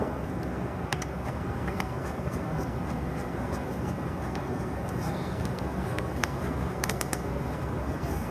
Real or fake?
fake